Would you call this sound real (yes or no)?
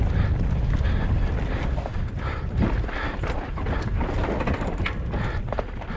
yes